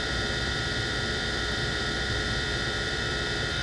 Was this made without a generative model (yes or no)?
no